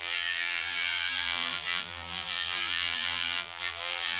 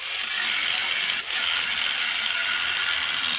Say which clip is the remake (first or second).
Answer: first